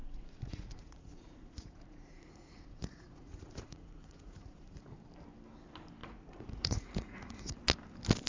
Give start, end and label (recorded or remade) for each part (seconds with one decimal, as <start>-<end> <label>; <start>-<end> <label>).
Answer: 0.0-5.0 remade; 5.0-6.0 recorded; 6.0-7.6 remade; 7.6-8.3 recorded

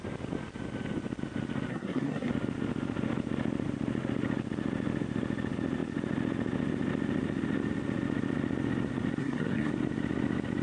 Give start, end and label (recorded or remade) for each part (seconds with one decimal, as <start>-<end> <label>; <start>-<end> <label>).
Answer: 0.0-1.7 recorded; 1.7-2.3 remade; 2.3-9.2 recorded; 9.2-9.7 remade; 9.7-10.6 recorded